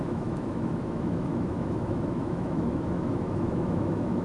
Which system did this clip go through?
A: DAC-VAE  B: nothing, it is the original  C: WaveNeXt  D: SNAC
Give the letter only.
A